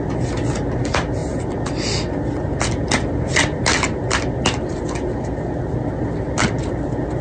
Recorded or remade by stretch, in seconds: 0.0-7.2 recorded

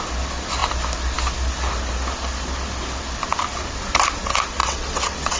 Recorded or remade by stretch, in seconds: 0.0-4.6 recorded; 4.6-5.4 remade

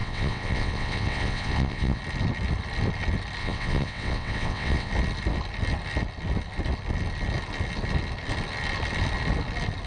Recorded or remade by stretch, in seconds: 0.0-2.0 remade; 2.0-3.4 recorded; 3.4-4.9 remade; 4.9-9.9 recorded

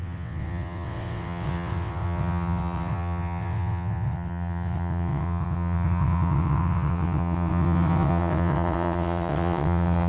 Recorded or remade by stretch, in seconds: 0.0-10.1 remade

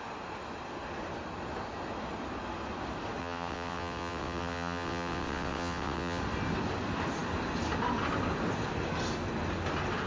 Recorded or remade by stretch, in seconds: 0.0-3.2 recorded; 3.2-6.2 remade; 6.2-10.1 recorded